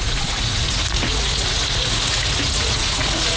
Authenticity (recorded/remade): remade